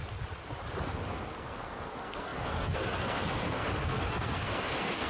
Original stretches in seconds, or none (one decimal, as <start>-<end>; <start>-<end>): 0.0-0.8